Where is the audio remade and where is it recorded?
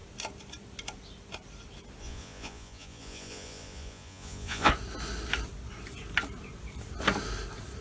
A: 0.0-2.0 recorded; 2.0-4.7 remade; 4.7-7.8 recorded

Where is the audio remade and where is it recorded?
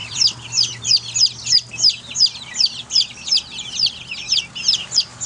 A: 0.0-0.8 remade; 0.8-2.8 recorded; 2.8-3.4 remade; 3.4-5.3 recorded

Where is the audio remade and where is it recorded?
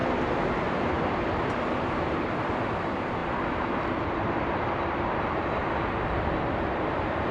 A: 0.0-0.6 recorded; 0.6-3.2 remade; 3.2-4.0 recorded; 4.0-7.3 remade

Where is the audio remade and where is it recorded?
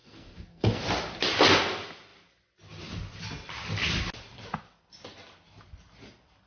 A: 0.0-0.8 remade; 0.8-6.5 recorded